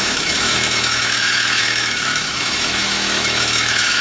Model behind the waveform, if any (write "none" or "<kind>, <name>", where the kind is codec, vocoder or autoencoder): autoencoder, DAC-VAE